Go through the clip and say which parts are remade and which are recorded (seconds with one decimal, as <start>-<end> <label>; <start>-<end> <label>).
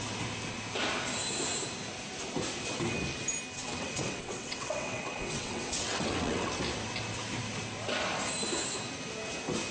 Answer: 0.0-3.6 recorded; 3.6-6.5 remade; 6.5-9.7 recorded